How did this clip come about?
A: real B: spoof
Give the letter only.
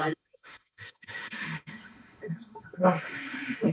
B